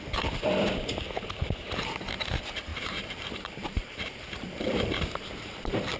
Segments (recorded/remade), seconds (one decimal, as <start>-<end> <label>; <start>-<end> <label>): 0.0-2.7 recorded; 2.7-6.0 remade